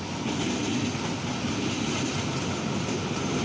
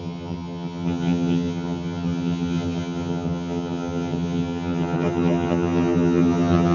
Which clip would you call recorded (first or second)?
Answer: first